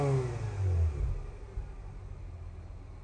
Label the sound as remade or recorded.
recorded